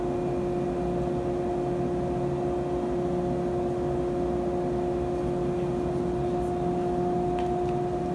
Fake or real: real